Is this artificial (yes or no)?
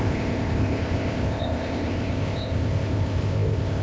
yes